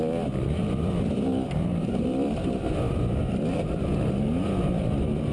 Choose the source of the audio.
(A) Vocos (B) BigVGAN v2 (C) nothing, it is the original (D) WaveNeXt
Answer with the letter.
B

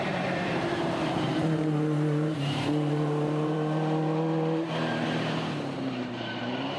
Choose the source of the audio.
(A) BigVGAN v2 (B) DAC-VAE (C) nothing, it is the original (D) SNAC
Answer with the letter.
A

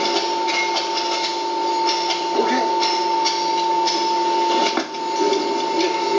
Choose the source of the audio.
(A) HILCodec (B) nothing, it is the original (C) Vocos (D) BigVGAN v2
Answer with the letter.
B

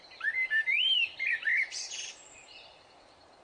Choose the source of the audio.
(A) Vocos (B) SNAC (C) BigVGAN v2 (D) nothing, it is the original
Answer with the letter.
C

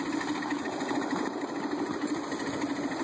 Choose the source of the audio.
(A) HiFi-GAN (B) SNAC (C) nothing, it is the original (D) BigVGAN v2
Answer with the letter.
C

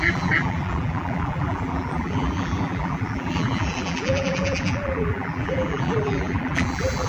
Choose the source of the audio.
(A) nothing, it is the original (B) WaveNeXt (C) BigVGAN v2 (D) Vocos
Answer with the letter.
C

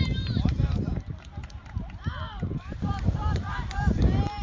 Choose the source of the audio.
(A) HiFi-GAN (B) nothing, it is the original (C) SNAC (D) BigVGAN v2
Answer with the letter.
D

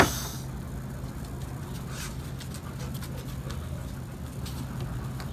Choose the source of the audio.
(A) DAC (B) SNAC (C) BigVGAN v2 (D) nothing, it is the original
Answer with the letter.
D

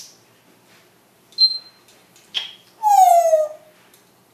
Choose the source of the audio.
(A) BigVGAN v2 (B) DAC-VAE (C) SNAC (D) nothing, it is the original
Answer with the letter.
D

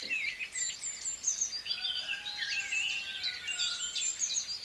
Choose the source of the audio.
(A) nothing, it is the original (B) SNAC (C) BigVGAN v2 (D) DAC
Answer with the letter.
A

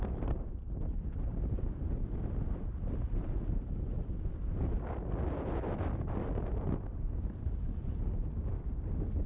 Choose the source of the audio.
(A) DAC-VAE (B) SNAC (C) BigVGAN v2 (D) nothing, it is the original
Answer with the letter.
C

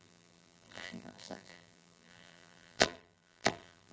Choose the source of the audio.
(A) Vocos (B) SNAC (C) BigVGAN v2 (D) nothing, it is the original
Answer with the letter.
C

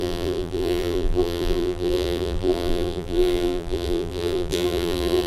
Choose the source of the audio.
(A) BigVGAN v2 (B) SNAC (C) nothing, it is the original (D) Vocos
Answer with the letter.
A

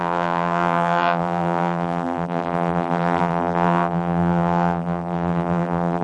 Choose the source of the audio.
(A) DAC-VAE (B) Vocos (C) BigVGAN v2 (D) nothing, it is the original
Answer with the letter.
C